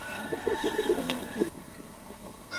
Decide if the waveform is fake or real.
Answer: fake